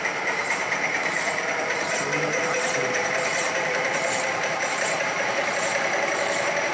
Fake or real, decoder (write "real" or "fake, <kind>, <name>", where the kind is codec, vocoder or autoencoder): fake, vocoder, BigVGAN v2